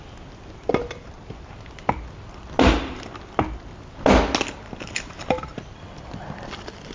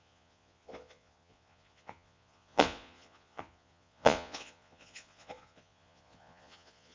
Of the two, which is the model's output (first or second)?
second